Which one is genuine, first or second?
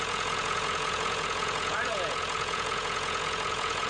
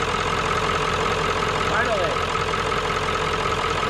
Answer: second